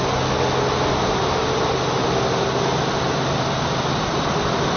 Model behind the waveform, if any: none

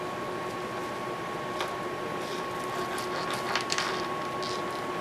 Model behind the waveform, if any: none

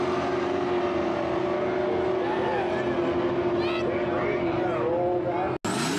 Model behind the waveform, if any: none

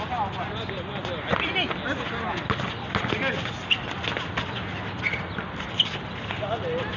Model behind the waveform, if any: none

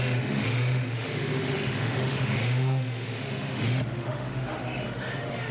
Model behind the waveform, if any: autoencoder, DAC-VAE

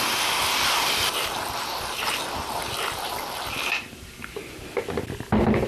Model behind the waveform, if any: none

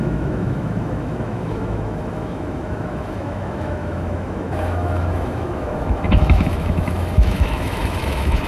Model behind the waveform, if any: autoencoder, DAC-VAE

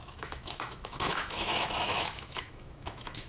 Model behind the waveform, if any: autoencoder, DAC-VAE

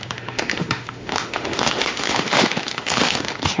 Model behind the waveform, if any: autoencoder, DAC-VAE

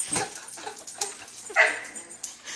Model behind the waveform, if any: none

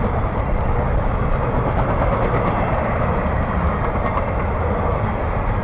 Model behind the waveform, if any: none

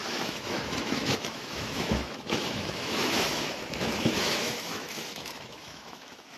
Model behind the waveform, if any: autoencoder, DAC-VAE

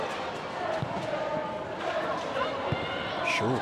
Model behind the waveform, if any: none